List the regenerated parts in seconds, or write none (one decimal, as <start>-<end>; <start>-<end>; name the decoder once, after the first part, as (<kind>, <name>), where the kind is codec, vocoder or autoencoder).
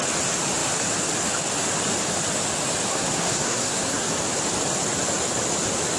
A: 2.9-4.1 (codec, SNAC)